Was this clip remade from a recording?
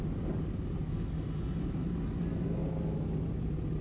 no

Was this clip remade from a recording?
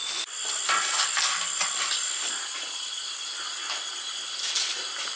no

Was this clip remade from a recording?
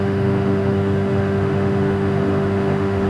yes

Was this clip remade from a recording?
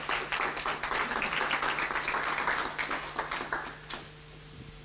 no